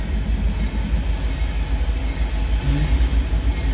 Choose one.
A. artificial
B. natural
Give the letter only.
B